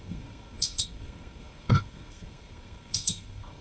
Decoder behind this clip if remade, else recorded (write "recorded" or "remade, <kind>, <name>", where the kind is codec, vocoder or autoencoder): remade, codec, SNAC